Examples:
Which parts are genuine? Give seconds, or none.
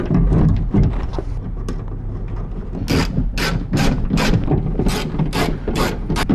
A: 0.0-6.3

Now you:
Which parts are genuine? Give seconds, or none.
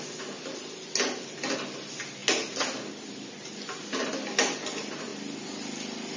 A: 0.0-6.2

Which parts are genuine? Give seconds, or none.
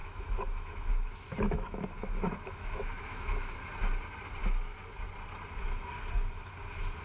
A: 3.7-4.4; 4.9-7.0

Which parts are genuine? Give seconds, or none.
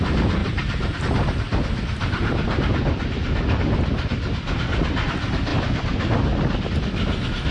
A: 0.0-0.4; 1.0-7.5